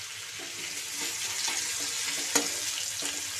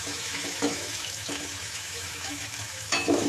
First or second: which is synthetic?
second